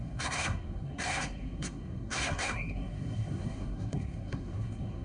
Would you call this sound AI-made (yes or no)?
yes